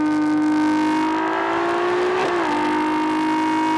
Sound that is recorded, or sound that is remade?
recorded